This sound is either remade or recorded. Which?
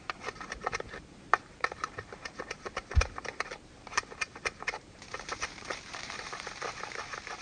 remade